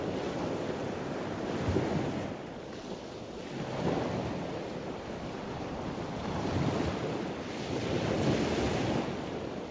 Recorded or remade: recorded